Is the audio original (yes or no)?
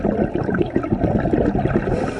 yes